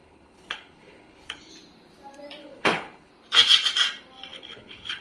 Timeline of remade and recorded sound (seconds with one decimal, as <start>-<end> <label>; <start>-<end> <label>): 0.0-1.5 remade; 1.5-2.4 recorded; 2.4-3.1 remade; 3.1-4.3 recorded; 4.3-5.0 remade